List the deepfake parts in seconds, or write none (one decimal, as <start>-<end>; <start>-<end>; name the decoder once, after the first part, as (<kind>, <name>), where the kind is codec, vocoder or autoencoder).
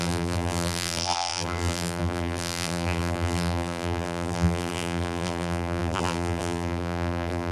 0.0-7.5 (vocoder, BigVGAN v2)